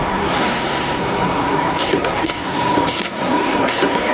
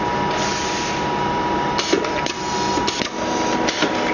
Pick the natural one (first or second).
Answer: second